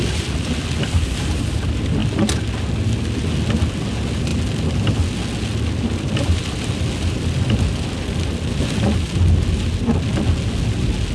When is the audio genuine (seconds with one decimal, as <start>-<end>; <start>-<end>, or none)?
0.0-11.1